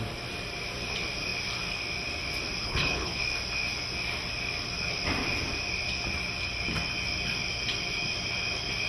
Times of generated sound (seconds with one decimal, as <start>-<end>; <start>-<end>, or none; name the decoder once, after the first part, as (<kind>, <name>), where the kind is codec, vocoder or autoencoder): 2.6-3.2 (codec, HILCodec)